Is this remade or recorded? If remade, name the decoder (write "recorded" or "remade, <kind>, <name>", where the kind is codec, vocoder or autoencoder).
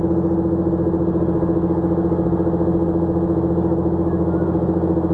recorded